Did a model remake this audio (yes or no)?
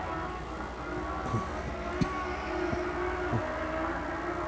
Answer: no